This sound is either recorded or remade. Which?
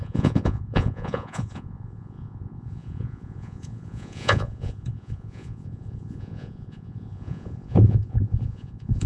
remade